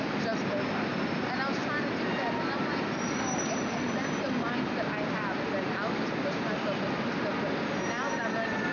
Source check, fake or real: real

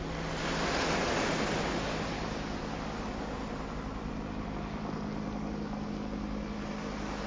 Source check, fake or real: real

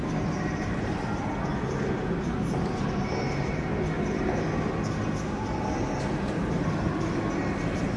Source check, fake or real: real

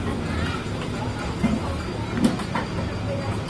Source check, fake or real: real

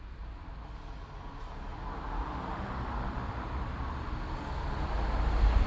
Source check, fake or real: real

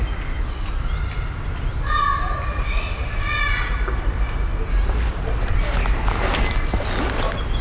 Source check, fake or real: real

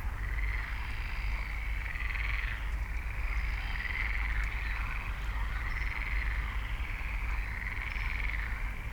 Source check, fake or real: real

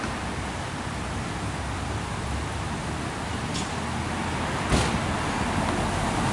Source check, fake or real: real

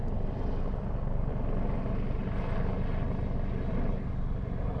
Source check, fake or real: real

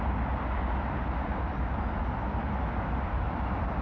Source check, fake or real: real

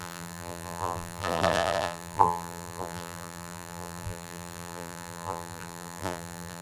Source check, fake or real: fake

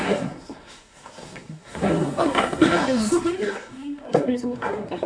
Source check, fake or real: fake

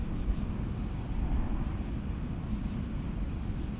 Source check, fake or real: real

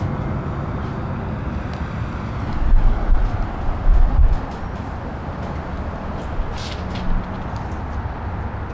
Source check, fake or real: real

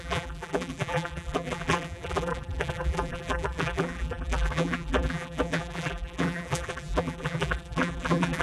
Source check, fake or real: fake